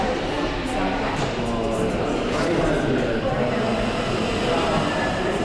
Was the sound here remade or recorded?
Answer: recorded